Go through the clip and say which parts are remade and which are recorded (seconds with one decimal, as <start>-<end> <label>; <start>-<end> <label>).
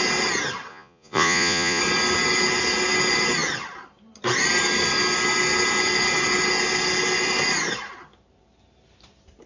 0.0-0.7 recorded; 0.7-1.8 remade; 1.8-9.5 recorded